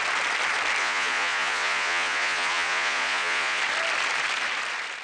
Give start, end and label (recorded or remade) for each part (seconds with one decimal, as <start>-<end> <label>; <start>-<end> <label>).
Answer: 0.0-0.8 recorded; 0.8-3.6 remade; 3.6-5.0 recorded